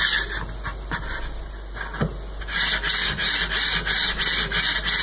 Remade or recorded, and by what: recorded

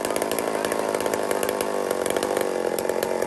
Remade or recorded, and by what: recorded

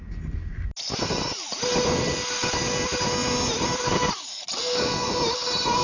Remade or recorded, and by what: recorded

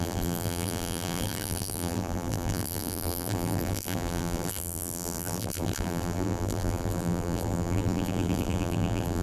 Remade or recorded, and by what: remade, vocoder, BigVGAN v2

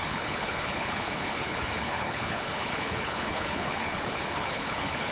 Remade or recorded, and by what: remade, codec, HILCodec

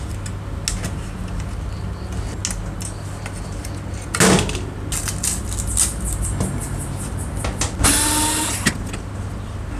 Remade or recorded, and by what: recorded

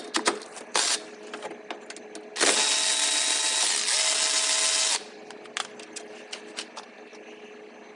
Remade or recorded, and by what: recorded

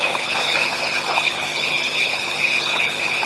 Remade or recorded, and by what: remade, codec, HILCodec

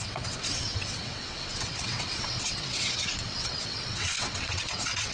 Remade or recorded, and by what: remade, vocoder, WaveNeXt